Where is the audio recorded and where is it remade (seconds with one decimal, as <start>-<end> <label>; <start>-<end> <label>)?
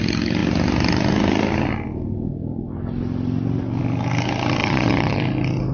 0.0-4.6 recorded; 4.6-5.2 remade; 5.2-5.7 recorded